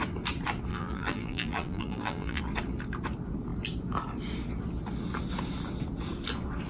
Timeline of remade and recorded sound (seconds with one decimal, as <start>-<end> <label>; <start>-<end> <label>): 0.0-0.7 recorded; 0.7-2.4 remade; 2.4-6.7 recorded